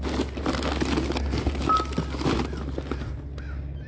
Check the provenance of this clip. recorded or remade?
recorded